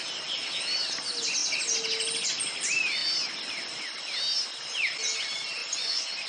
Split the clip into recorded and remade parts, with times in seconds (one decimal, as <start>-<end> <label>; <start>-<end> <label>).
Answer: 0.0-5.6 recorded; 5.6-6.3 remade